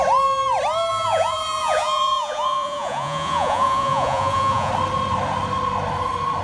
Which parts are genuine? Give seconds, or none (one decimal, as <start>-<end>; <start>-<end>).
0.0-0.9; 4.7-6.4